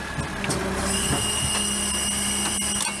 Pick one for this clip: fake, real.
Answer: real